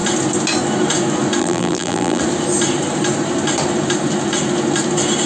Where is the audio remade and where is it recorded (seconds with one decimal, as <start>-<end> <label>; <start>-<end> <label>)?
0.0-1.4 recorded; 1.4-2.2 remade; 2.2-5.2 recorded